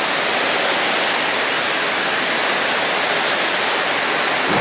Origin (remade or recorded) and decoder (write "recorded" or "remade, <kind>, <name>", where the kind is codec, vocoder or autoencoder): recorded